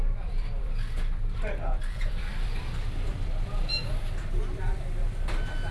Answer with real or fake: fake